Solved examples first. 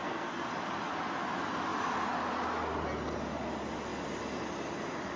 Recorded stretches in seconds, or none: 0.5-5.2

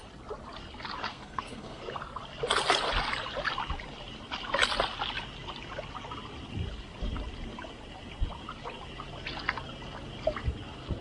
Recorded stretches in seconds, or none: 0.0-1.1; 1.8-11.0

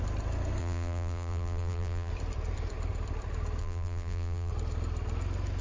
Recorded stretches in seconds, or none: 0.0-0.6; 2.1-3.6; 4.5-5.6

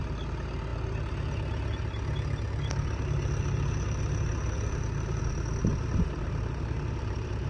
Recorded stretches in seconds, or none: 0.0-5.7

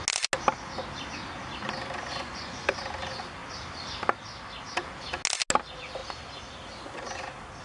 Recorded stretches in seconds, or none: 0.0-2.1; 2.8-7.6

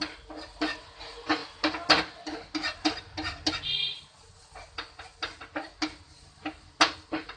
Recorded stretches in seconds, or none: 0.0-7.4

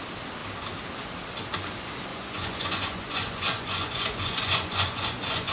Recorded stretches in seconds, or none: 0.0-2.1